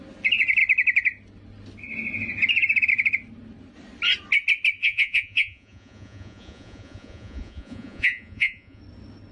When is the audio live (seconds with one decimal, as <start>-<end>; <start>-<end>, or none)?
0.0-4.8; 8.8-9.3